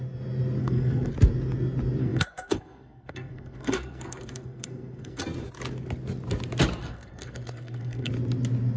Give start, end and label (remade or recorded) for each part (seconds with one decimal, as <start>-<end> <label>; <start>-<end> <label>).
0.0-0.6 recorded; 0.6-1.1 remade; 1.1-2.0 recorded; 2.0-5.2 remade; 5.2-6.8 recorded; 6.8-8.1 remade; 8.1-8.8 recorded